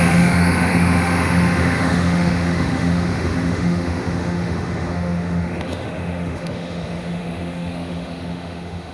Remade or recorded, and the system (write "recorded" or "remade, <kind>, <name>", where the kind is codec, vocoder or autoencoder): remade, autoencoder, DAC-VAE